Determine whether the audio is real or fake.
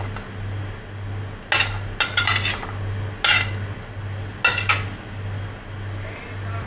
real